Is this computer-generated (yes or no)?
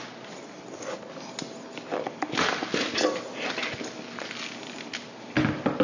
no